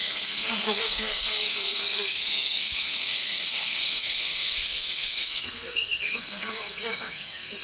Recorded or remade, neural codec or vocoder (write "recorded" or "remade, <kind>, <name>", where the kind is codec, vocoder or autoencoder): remade, codec, SNAC